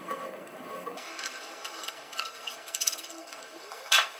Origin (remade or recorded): remade